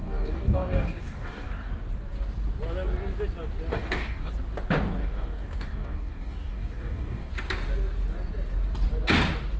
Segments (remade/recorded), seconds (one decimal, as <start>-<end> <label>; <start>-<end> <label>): 0.0-1.7 remade; 1.7-3.7 recorded; 3.7-4.3 remade; 4.3-5.0 recorded; 5.0-7.3 remade; 7.3-9.6 recorded